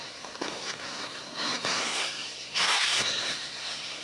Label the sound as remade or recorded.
remade